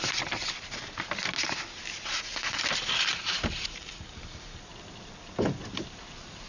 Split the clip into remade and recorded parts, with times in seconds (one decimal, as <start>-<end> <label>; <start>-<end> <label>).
0.0-0.4 remade; 0.4-3.2 recorded; 3.2-4.7 remade; 4.7-5.9 recorded; 5.9-6.5 remade